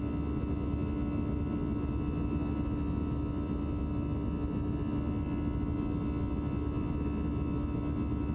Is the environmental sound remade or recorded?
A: recorded